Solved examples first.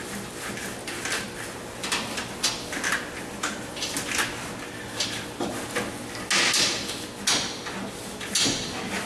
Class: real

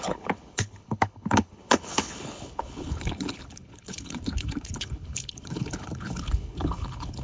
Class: fake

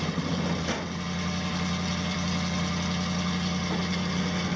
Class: real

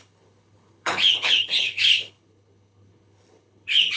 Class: fake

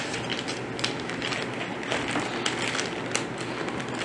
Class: real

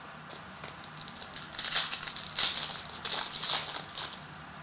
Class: real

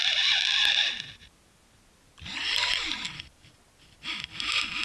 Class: real